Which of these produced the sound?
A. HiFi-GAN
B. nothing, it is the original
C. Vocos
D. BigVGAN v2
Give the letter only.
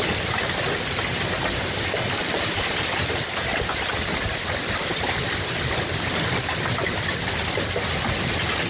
B